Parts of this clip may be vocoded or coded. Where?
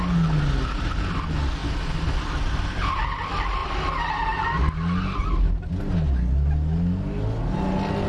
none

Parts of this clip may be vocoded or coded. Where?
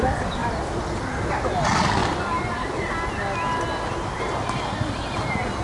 none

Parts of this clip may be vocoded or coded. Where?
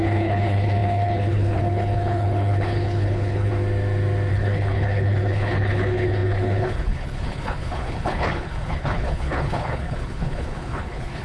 0.0-3.5; 4.3-11.2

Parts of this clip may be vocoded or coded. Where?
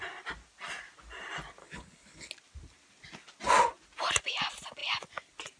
1.6-2.3